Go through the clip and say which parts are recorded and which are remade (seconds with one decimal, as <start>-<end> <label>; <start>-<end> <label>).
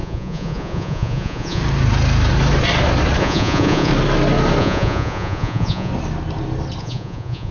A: 0.0-1.6 remade; 1.6-3.2 recorded; 3.2-3.9 remade; 3.9-4.6 recorded; 4.6-5.9 remade; 5.9-6.8 recorded; 6.8-7.5 remade